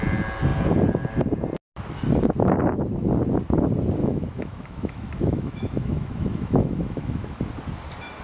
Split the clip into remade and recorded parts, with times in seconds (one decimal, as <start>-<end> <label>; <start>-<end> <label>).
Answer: 0.0-4.0 recorded; 4.0-7.4 remade; 7.4-8.2 recorded